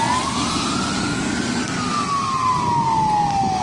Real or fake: real